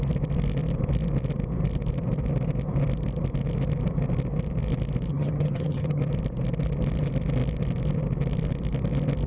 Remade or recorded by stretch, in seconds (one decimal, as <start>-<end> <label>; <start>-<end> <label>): 0.0-5.1 recorded; 5.1-6.0 remade; 6.0-9.3 recorded

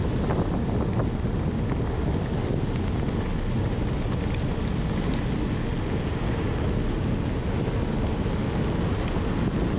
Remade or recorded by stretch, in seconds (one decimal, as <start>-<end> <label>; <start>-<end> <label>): 0.0-9.8 recorded

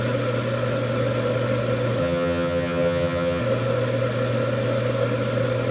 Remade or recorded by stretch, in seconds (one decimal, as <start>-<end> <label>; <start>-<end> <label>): 0.0-2.0 recorded; 2.0-3.4 remade; 3.4-5.7 recorded

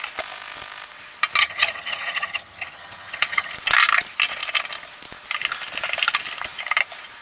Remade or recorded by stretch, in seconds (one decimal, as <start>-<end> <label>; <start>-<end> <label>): 0.0-1.4 recorded; 1.4-3.5 remade; 3.5-7.2 recorded

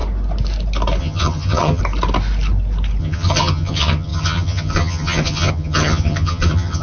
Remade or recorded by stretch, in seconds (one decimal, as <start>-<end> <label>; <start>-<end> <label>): 0.0-1.0 recorded; 1.0-1.8 remade; 1.8-3.0 recorded; 3.0-6.8 remade

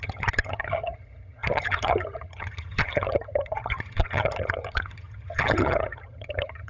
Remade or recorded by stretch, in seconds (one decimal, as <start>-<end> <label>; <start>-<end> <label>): 0.0-6.7 remade

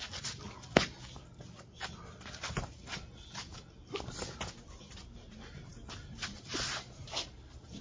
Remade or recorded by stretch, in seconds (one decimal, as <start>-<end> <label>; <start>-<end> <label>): 0.0-7.8 recorded

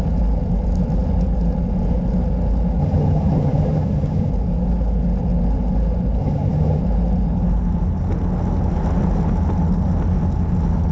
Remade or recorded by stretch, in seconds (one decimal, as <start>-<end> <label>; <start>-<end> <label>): 0.0-2.8 recorded; 2.8-4.3 remade; 4.3-6.2 recorded; 6.2-6.8 remade; 6.8-10.9 recorded